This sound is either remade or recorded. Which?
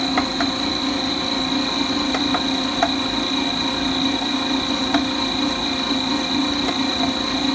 recorded